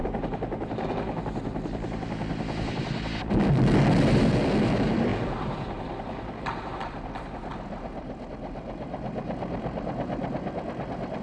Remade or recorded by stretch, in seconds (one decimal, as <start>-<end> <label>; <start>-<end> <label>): 0.0-11.2 recorded